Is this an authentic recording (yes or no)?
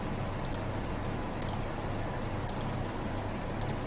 yes